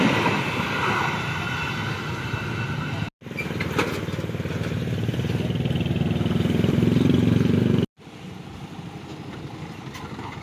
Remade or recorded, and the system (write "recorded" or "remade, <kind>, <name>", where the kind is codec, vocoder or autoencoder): recorded